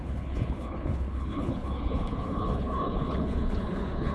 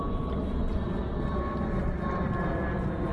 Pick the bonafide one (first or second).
second